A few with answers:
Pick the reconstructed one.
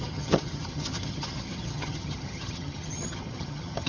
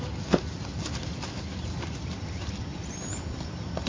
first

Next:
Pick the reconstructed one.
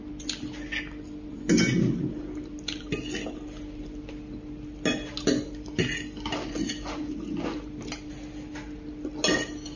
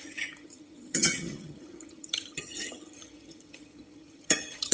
second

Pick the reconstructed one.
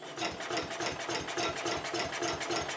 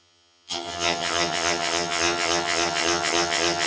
second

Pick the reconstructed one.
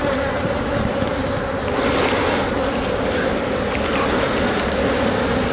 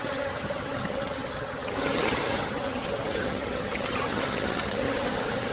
second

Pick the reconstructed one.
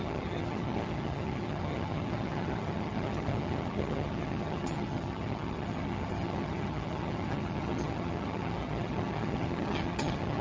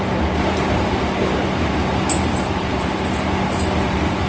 first